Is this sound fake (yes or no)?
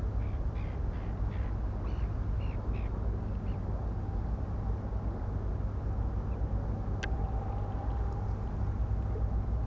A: no